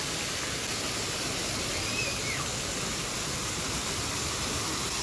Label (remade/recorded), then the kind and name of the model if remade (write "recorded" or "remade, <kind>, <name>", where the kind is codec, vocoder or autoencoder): recorded